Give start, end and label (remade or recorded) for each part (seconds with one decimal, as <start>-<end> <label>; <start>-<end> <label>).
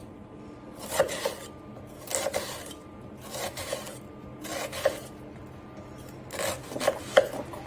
0.0-1.0 remade; 1.0-7.7 recorded